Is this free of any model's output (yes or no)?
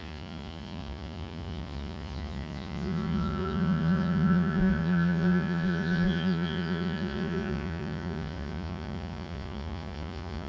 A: no